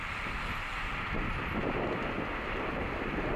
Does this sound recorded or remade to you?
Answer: recorded